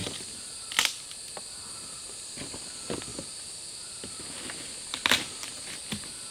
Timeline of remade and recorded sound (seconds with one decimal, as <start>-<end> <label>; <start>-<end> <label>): 0.0-6.3 recorded